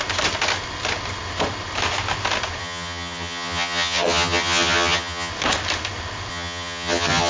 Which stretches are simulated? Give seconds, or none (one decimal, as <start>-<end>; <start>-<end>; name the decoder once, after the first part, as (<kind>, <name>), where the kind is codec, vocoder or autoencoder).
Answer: 2.6-5.3 (vocoder, HiFi-GAN); 6.3-7.3